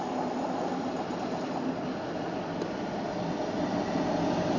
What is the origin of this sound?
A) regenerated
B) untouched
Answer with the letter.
B